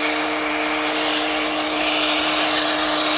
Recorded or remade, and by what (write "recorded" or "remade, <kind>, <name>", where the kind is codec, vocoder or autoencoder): recorded